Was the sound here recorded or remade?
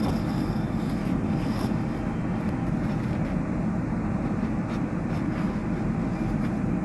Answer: recorded